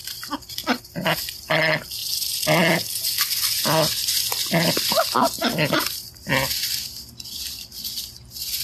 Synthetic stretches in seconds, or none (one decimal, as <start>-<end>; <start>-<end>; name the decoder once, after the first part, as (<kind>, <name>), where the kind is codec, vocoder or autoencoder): none